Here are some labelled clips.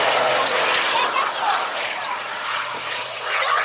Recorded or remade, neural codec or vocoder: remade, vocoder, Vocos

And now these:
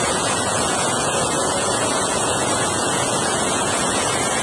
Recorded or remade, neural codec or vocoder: remade, vocoder, Vocos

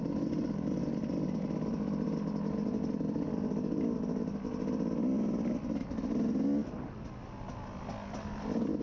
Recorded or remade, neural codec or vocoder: recorded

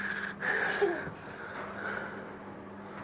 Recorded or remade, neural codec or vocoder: recorded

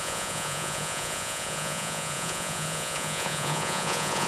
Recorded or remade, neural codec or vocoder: remade, vocoder, Vocos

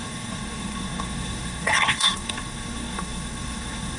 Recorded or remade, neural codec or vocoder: remade, codec, SNAC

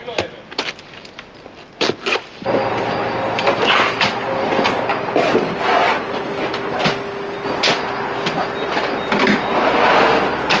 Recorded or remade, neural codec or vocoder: recorded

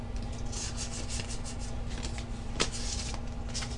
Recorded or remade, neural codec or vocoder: recorded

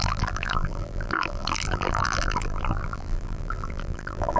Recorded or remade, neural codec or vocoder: remade, vocoder, BigVGAN v2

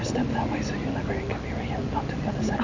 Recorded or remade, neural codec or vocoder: recorded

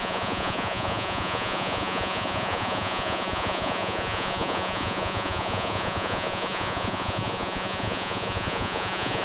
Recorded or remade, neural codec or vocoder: remade, vocoder, Vocos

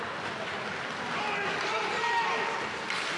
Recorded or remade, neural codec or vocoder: recorded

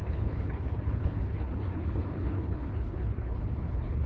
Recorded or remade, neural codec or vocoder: remade, codec, HILCodec